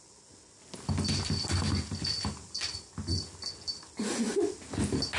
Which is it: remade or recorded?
recorded